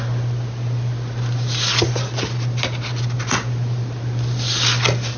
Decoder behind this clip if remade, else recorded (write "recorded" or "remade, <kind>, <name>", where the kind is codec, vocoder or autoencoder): recorded